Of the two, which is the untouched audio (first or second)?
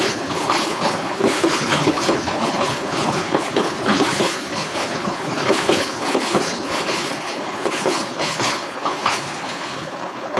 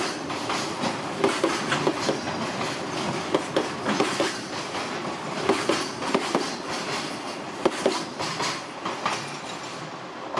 second